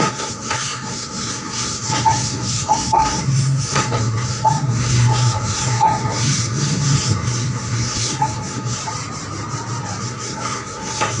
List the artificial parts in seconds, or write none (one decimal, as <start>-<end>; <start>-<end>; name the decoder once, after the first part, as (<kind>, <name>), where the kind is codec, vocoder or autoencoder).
0.0-8.8 (codec, SNAC); 10.0-11.2